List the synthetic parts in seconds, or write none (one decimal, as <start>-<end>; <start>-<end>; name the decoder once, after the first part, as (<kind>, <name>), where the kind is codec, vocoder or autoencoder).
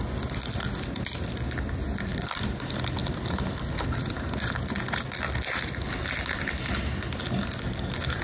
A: none